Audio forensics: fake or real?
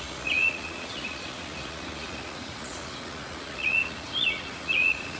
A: fake